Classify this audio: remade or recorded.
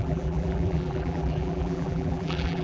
remade